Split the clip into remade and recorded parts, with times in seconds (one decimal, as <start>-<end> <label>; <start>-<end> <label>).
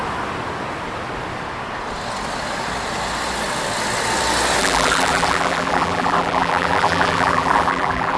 0.0-4.6 recorded; 4.6-8.2 remade